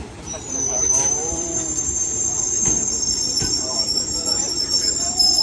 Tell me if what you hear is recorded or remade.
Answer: remade